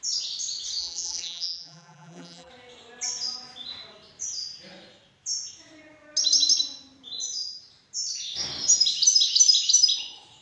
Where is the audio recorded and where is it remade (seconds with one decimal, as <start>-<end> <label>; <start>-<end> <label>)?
0.0-0.8 recorded; 0.8-2.5 remade; 2.5-10.4 recorded